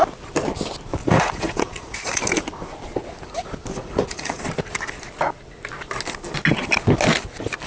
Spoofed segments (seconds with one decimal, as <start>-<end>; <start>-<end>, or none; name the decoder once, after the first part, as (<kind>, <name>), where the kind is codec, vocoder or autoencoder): 1.0-2.2 (vocoder, Vocos); 3.7-4.4